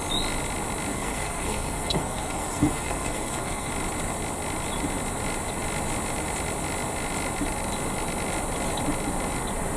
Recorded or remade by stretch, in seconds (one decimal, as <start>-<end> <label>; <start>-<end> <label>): 0.0-0.9 recorded; 0.9-3.7 remade; 3.7-9.8 recorded